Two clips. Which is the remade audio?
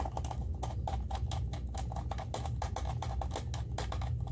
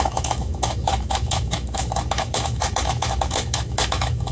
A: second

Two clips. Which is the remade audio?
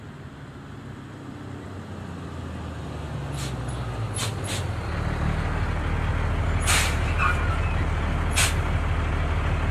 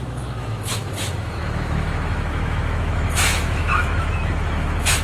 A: second